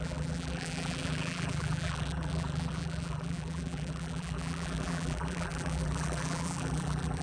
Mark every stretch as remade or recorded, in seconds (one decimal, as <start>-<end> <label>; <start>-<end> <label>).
0.0-7.2 remade